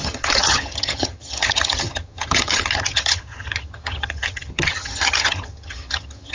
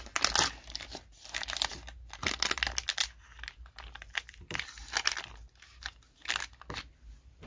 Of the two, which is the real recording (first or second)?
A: second